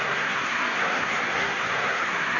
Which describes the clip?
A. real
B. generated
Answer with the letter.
B